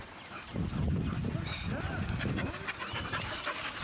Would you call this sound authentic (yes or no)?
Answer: yes